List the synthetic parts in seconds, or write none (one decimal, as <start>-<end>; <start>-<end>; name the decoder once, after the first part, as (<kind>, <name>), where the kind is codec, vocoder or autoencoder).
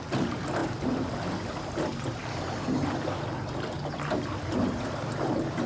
none